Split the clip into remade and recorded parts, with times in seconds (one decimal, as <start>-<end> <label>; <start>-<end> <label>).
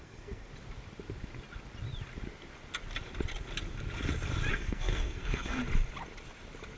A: 0.0-0.5 remade; 0.5-4.5 recorded; 4.5-5.6 remade; 5.6-6.8 recorded